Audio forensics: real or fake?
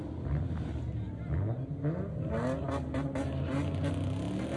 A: real